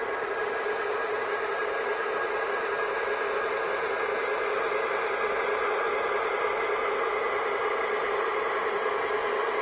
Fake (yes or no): no